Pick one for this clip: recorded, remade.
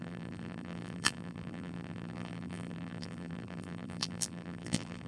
remade